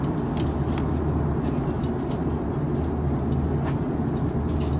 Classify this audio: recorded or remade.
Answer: recorded